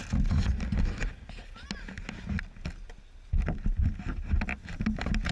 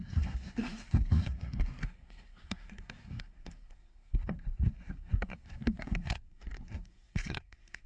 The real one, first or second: first